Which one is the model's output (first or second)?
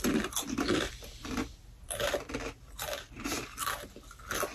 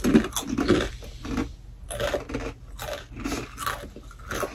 first